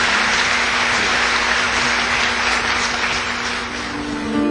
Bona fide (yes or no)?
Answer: yes